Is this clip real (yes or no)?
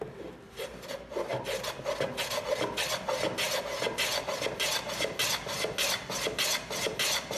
yes